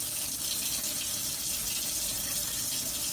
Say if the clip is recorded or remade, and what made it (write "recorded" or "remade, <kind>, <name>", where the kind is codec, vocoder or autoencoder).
recorded